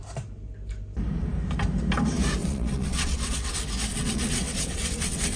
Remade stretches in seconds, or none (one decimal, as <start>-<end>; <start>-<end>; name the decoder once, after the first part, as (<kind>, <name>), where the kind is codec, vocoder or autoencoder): 2.4-3.5 (vocoder, WaveNeXt); 3.9-5.4